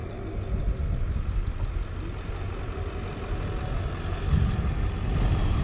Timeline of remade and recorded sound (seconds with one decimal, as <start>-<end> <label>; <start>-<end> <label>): 0.0-5.6 recorded